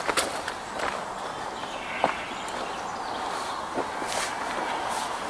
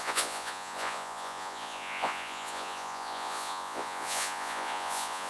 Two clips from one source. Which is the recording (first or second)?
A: first